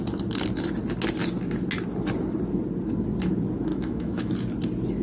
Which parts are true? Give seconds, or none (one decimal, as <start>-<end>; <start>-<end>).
0.0-3.7; 4.3-5.0